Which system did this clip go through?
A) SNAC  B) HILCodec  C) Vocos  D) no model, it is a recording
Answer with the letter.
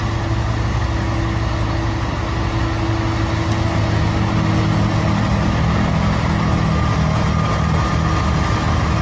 D